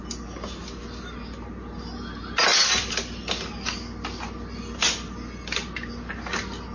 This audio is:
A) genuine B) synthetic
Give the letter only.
A